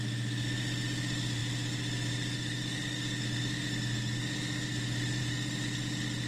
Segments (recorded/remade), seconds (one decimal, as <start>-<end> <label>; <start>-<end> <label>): 0.0-6.3 recorded